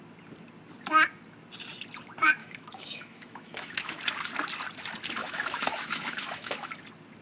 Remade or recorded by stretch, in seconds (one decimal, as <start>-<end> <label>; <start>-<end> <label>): 0.0-2.4 recorded; 2.4-4.0 remade; 4.0-5.2 recorded; 5.2-6.7 remade; 6.7-7.2 recorded